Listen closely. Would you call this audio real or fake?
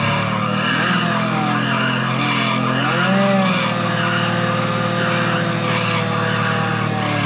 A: real